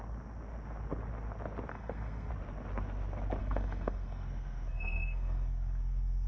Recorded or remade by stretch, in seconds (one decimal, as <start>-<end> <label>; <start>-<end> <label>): 0.0-1.7 recorded; 1.7-2.3 remade; 2.3-3.4 recorded; 3.4-6.3 remade